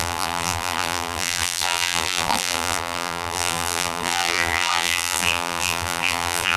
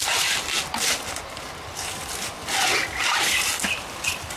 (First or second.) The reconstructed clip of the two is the first